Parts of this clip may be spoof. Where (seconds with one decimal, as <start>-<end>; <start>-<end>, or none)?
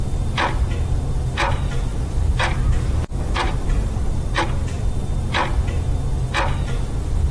1.9-4.4